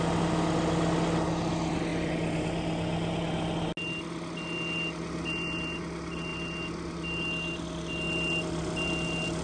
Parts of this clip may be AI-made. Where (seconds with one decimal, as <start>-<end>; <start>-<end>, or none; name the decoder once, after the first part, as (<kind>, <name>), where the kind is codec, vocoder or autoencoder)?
none